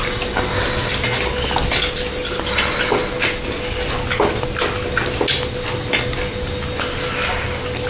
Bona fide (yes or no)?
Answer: yes